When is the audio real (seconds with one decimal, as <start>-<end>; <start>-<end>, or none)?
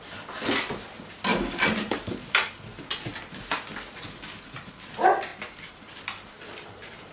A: 0.0-1.3; 2.5-5.3